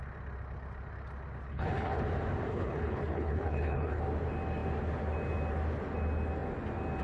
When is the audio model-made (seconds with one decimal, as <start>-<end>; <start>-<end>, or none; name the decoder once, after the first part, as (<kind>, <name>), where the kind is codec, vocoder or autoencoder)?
1.5-2.0 (codec, HILCodec); 2.5-4.0